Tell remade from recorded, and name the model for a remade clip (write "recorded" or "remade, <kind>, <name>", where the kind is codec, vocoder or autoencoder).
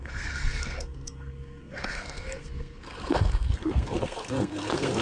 remade, codec, SNAC